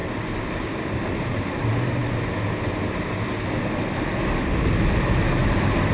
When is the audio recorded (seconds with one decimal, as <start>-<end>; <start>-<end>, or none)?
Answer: 0.0-5.9